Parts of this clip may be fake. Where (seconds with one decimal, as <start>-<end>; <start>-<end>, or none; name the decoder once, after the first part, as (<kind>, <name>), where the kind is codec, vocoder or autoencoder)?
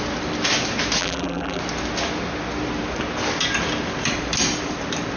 1.0-1.6 (vocoder, BigVGAN v2)